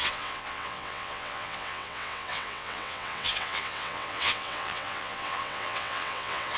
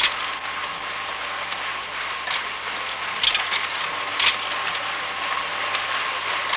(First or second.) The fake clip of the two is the first